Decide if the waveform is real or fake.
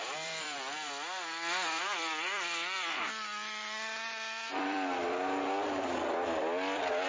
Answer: fake